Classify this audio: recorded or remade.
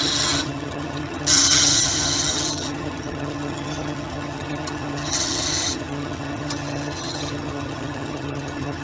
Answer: remade